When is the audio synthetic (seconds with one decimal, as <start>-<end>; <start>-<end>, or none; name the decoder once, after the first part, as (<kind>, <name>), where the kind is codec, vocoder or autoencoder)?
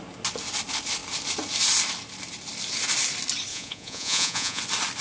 3.5-4.6 (vocoder, Vocos)